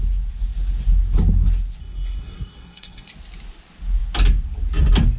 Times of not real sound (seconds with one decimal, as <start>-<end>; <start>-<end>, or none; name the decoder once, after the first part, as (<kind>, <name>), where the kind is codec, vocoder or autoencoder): 1.8-3.1 (codec, SNAC)